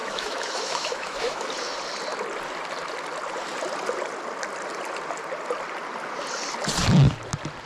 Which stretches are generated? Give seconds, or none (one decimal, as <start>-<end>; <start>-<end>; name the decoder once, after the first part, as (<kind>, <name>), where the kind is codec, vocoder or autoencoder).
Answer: 0.0-1.4 (autoencoder, DAC-VAE)